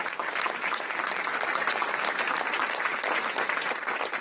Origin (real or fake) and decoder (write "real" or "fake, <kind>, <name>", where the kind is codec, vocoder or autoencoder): fake, vocoder, BigVGAN v2